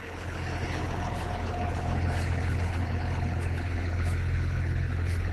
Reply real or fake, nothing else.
fake